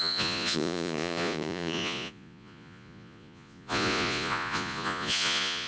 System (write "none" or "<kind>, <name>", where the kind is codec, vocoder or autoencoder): vocoder, Vocos